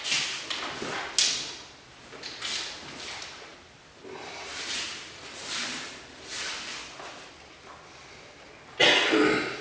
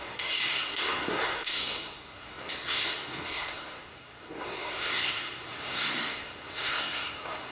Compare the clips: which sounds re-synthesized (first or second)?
second